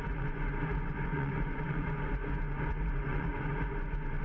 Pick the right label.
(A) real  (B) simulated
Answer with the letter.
B